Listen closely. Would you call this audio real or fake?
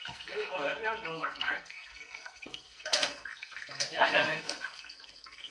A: fake